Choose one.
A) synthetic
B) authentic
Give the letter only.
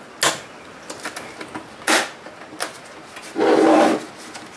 B